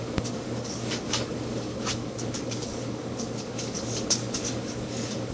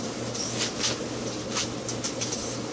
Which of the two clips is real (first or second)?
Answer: second